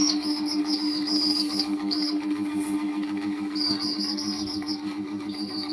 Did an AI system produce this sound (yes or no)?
yes